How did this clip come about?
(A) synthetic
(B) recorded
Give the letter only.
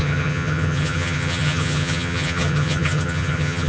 A